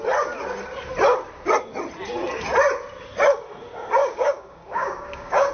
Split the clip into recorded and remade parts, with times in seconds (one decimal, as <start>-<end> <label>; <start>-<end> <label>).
0.0-4.0 recorded; 4.0-5.5 remade